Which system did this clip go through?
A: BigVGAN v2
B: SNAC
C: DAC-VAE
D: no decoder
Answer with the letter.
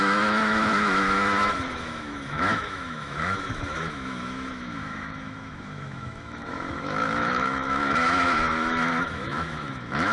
C